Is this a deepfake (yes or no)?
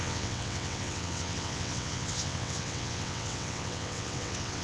yes